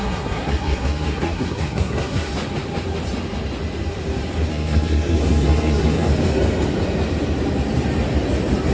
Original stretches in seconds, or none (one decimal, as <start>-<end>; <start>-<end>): 2.3-4.5; 6.1-8.7

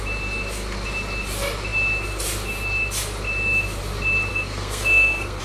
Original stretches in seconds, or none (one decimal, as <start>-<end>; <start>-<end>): 0.0-4.3

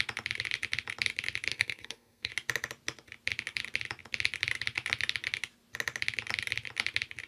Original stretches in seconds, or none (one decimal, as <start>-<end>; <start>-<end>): 0.0-1.5; 2.3-7.3

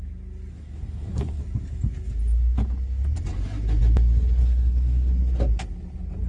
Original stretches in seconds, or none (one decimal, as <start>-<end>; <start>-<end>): 0.0-0.5; 1.4-4.4; 5.1-6.3

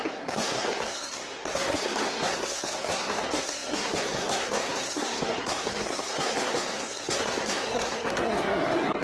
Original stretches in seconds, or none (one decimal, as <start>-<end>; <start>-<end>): none

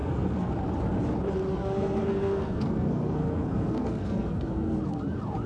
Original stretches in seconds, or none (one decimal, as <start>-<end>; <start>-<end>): 0.5-1.5; 4.8-5.5

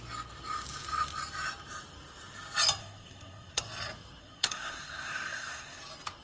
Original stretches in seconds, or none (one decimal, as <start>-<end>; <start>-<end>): 0.0-2.8; 3.6-4.2; 5.8-6.2